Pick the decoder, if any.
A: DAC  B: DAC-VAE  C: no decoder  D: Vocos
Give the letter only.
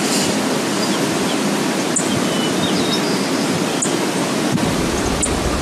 C